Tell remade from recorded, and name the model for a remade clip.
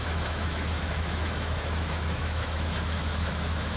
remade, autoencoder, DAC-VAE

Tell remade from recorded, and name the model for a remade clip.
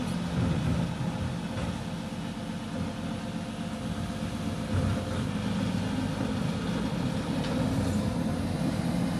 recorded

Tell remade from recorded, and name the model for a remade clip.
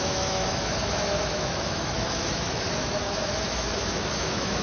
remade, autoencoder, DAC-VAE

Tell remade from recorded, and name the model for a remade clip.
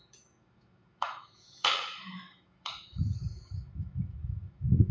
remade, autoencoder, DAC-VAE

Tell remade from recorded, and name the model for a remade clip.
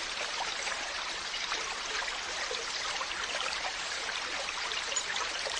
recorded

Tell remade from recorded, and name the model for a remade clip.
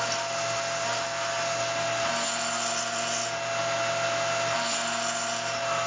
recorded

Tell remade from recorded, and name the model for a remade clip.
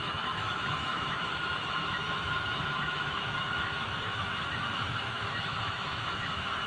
remade, autoencoder, DAC-VAE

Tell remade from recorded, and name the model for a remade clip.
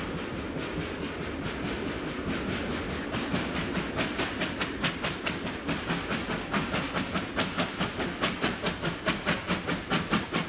recorded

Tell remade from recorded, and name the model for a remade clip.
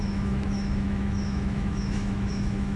remade, autoencoder, DAC-VAE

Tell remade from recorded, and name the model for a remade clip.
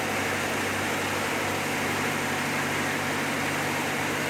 recorded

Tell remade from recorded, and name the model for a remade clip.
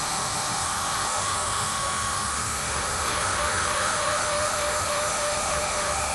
remade, autoencoder, DAC-VAE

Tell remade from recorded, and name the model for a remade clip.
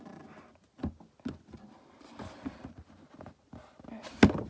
recorded